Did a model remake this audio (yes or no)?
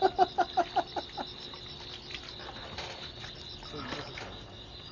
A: no